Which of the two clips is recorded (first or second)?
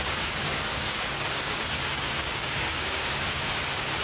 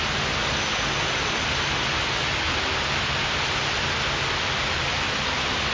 second